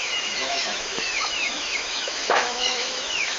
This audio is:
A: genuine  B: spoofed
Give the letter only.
B